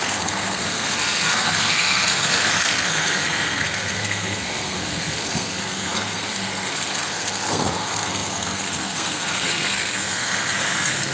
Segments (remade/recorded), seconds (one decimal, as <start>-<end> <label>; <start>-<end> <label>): 0.0-11.1 remade